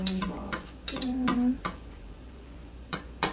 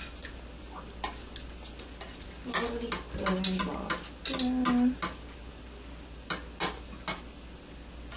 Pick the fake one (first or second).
first